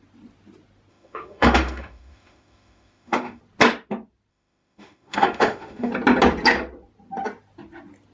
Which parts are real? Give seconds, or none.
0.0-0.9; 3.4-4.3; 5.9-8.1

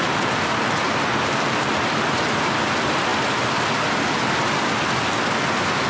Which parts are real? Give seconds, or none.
2.2-5.9

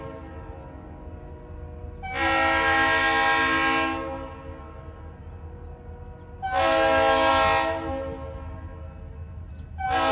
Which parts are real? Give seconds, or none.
0.0-10.1

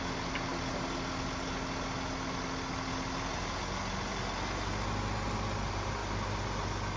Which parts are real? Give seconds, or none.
0.0-7.0

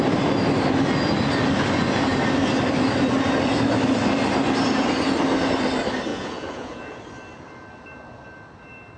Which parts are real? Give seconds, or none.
0.0-6.1; 7.0-9.0

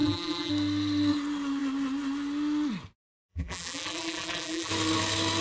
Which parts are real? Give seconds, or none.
0.5-3.3; 4.7-5.4

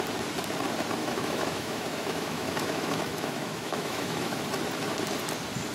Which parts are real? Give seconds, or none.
0.0-1.0; 4.4-5.7